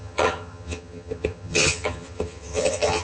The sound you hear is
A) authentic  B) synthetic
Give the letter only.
B